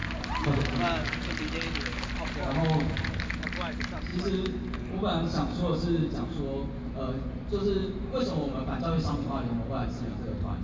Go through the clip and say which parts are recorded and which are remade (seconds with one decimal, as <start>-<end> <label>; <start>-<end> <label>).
0.0-7.8 recorded; 7.8-10.0 remade; 10.0-10.6 recorded